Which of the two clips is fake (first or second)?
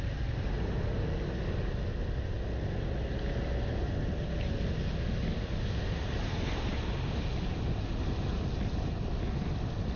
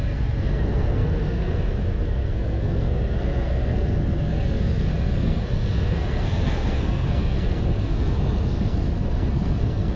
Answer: second